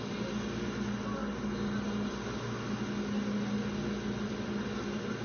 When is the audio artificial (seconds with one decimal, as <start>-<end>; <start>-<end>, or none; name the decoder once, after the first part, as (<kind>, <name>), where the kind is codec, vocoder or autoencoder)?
none